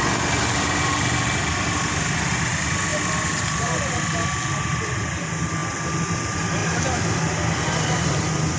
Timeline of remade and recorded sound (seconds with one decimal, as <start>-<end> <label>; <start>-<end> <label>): 0.0-8.6 recorded